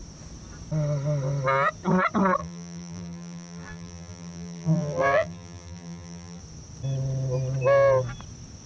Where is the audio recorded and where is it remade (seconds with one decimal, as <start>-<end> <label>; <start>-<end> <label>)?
0.0-2.4 recorded; 2.4-6.4 remade; 6.4-8.7 recorded